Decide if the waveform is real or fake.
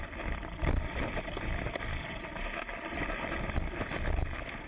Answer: real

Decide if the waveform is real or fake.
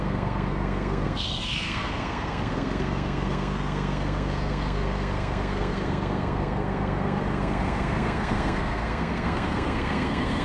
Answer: fake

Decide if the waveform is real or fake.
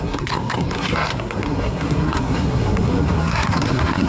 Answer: fake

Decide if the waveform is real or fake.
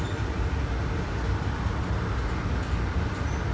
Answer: real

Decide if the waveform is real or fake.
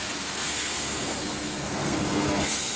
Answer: fake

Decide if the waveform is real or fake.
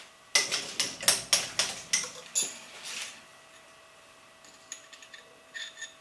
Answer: real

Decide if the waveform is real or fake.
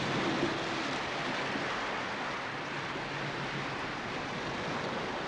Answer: real